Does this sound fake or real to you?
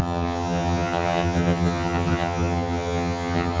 fake